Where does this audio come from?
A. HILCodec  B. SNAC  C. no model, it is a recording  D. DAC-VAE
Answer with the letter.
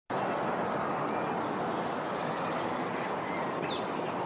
C